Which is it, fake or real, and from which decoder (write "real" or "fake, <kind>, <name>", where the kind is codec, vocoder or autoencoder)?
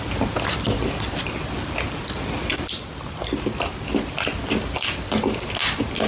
real